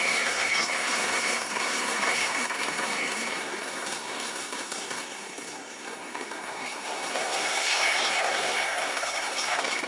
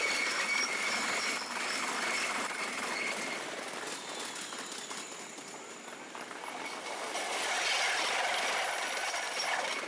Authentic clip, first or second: second